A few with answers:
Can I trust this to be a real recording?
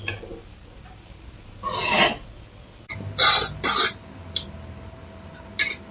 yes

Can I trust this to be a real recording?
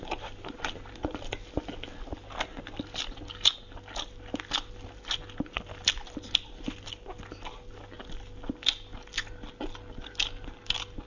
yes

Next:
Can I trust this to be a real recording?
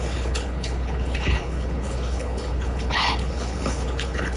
no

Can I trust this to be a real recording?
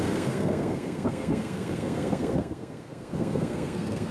no